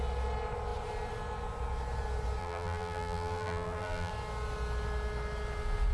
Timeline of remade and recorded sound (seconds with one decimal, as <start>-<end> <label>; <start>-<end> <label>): 0.0-2.4 recorded; 2.4-4.1 remade; 4.1-5.9 recorded